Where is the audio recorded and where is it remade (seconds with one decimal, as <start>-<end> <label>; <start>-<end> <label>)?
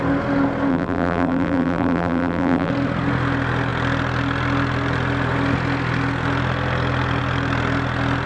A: 0.0-0.7 recorded; 0.7-2.7 remade; 2.7-8.3 recorded